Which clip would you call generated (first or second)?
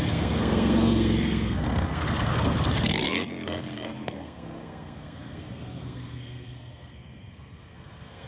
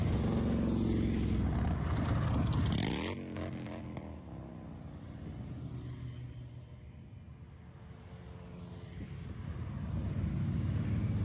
first